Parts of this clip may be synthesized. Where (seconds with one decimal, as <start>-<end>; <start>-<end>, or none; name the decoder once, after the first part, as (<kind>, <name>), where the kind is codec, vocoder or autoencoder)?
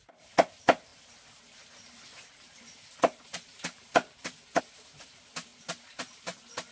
none